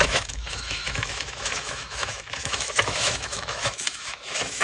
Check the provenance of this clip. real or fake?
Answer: fake